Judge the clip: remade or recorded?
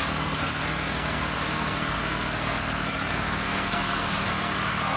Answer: remade